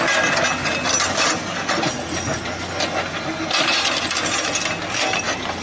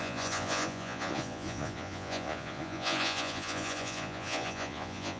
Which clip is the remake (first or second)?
second